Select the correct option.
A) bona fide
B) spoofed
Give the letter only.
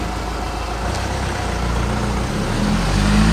A